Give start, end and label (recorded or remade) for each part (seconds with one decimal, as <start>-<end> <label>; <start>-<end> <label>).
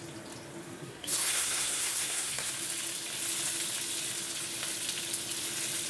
0.0-0.6 recorded; 0.6-2.5 remade; 2.5-5.9 recorded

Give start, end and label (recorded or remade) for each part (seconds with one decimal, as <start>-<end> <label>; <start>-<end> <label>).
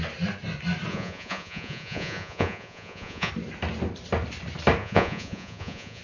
0.0-0.9 recorded; 0.9-3.3 remade; 3.3-4.8 recorded; 4.8-6.0 remade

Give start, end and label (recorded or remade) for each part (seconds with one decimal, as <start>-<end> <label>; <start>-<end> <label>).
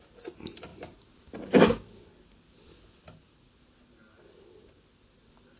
0.0-5.6 recorded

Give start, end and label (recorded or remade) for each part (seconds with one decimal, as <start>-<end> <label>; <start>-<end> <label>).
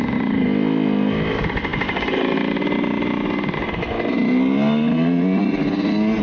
0.0-6.2 recorded